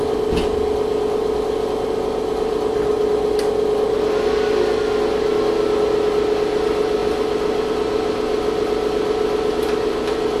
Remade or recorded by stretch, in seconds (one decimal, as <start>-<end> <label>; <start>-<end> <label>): 0.0-10.4 recorded